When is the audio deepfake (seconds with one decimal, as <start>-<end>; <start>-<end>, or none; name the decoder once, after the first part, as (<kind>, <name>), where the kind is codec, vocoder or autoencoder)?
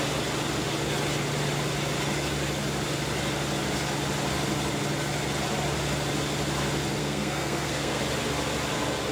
7.0-8.0 (codec, SNAC)